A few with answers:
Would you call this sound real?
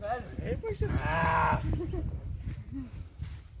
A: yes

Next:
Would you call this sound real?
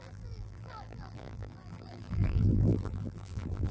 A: no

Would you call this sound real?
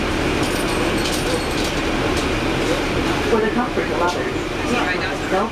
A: yes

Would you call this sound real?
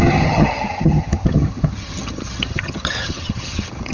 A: no